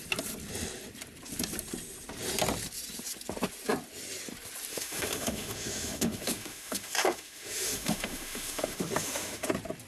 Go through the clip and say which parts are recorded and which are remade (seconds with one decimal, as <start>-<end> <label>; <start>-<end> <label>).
0.0-4.7 recorded; 4.7-9.5 remade; 9.5-9.9 recorded